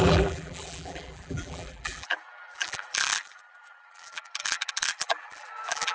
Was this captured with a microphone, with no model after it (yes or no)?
no